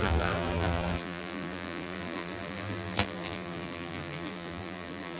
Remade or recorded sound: remade